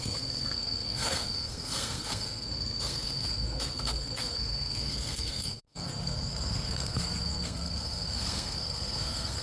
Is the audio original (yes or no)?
no